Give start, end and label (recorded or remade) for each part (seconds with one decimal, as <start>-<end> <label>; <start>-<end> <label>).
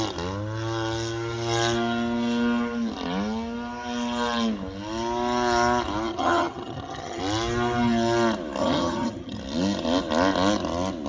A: 0.0-6.1 recorded; 6.1-7.2 remade; 7.2-8.6 recorded; 8.6-9.4 remade; 9.4-11.1 recorded